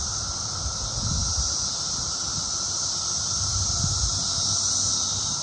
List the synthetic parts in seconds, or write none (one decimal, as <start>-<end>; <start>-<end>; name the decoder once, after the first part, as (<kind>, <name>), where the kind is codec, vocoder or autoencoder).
none